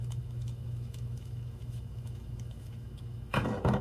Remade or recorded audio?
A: remade